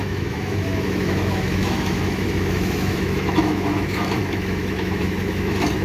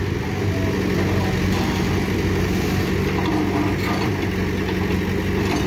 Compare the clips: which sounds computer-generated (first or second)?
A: first